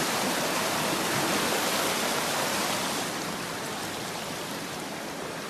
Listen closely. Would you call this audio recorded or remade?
remade